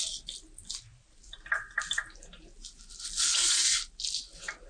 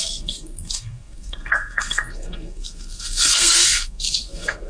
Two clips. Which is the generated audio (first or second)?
second